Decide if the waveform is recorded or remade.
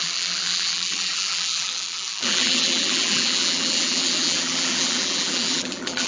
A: remade